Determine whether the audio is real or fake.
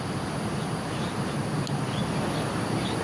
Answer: real